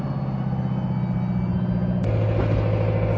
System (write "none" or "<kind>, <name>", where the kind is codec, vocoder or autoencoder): none